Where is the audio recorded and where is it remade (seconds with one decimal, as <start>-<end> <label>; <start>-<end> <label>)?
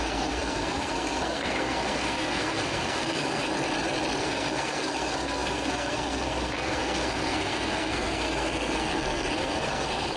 0.0-3.5 remade; 3.5-4.2 recorded; 4.2-10.2 remade